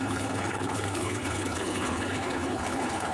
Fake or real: fake